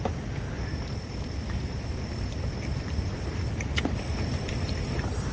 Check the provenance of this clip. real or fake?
real